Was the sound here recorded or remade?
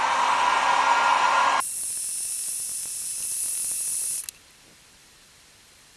recorded